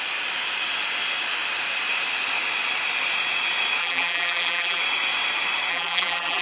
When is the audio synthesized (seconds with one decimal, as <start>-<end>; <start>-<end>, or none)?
3.8-4.8; 5.7-6.4